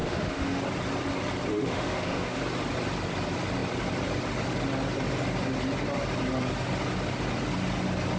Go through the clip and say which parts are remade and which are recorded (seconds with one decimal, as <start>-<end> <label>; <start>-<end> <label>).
0.0-0.6 remade; 0.6-1.5 recorded; 1.5-2.4 remade; 2.4-8.2 recorded